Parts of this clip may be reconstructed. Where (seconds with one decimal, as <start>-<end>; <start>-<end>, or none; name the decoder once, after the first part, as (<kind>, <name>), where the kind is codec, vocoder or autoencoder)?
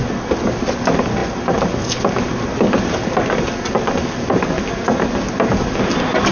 none